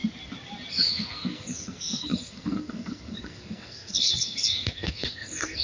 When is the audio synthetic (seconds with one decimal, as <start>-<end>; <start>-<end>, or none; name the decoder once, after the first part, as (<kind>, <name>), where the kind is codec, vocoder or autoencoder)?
0.7-5.6 (codec, SNAC)